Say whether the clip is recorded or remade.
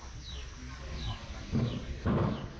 remade